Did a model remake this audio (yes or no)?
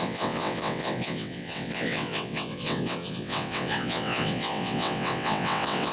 yes